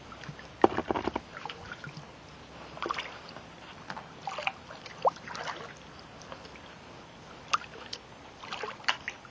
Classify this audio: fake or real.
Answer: real